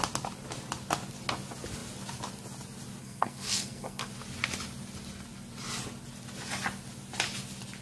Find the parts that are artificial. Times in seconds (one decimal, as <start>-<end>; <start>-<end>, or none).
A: 3.0-4.1